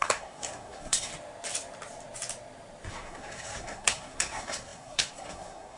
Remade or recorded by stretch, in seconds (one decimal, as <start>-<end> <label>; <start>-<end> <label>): 0.0-1.1 remade; 1.1-2.9 recorded; 2.9-5.8 remade